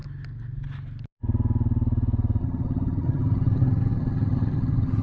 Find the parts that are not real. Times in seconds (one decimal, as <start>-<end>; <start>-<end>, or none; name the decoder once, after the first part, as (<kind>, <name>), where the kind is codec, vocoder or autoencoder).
2.4-5.0 (vocoder, HiFi-GAN)